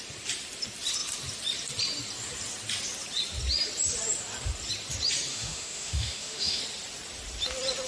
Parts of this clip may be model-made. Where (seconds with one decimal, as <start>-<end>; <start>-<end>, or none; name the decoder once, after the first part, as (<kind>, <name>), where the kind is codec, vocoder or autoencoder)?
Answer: 5.3-6.6 (autoencoder, DAC-VAE)

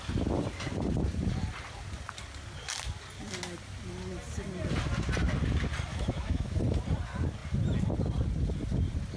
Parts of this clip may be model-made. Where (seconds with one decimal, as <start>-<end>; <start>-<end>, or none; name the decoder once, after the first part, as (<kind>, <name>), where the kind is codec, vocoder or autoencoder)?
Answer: 5.9-6.6 (autoencoder, DAC-VAE)

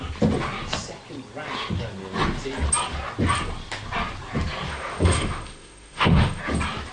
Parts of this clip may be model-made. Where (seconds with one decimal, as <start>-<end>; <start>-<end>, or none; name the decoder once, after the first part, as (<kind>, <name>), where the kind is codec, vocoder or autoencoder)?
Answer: 4.7-6.4 (autoencoder, DAC-VAE)

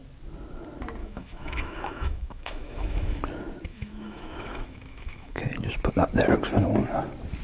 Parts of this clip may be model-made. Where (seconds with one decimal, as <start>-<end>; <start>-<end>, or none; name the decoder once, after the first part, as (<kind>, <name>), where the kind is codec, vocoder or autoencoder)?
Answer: 1.0-3.2 (autoencoder, DAC-VAE); 3.7-5.4

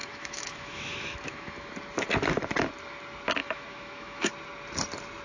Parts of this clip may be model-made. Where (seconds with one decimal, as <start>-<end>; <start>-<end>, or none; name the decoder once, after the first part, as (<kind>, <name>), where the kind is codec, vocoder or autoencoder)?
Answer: 0.0-1.7 (autoencoder, DAC-VAE); 3.4-4.3

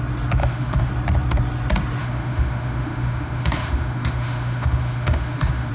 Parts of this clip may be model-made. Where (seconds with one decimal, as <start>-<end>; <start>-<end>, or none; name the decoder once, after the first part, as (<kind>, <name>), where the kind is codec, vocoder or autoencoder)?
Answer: 0.4-0.9 (autoencoder, DAC-VAE); 2.0-5.7

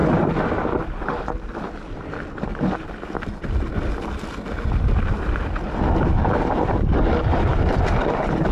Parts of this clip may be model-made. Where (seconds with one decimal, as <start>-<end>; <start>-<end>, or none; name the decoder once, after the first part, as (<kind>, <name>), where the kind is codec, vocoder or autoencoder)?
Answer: none